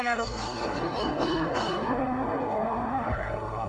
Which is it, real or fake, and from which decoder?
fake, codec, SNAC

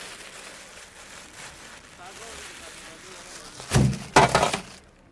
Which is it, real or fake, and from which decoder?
real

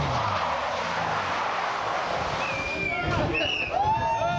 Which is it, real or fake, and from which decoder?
real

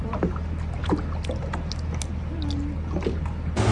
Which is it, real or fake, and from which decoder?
real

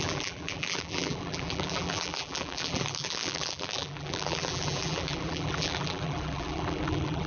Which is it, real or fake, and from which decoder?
fake, vocoder, BigVGAN v2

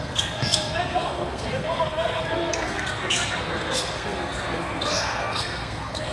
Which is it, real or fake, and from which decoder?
fake, codec, SNAC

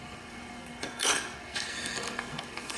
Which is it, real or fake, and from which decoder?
fake, codec, SNAC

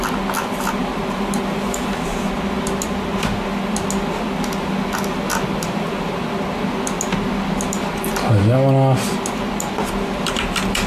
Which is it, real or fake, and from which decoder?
real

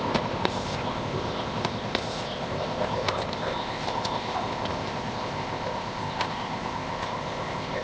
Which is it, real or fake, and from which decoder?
fake, codec, ZipCodec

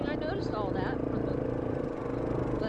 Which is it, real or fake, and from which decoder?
real